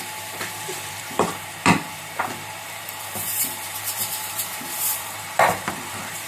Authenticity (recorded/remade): remade